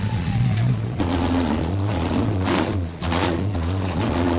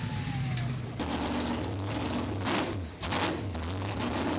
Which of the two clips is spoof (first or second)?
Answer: first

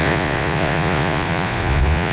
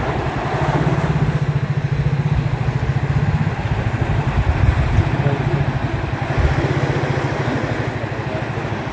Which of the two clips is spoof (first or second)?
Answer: first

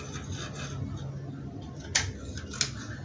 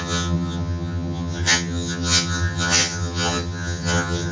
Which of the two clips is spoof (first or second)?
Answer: second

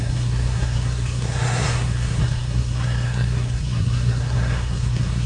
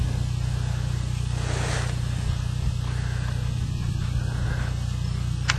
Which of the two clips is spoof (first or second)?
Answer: first